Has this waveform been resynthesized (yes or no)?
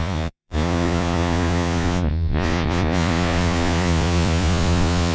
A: yes